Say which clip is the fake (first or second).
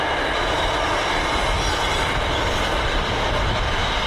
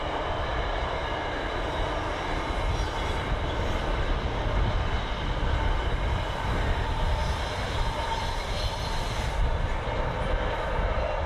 first